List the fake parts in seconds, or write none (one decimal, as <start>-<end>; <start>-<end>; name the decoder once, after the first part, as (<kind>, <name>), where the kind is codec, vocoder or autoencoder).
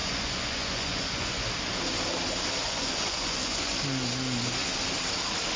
0.0-1.4 (vocoder, Vocos); 2.6-3.8